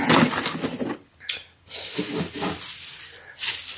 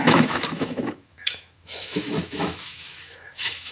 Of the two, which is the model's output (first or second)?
second